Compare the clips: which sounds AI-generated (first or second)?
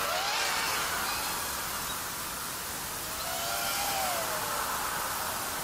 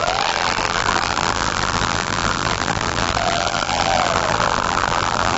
second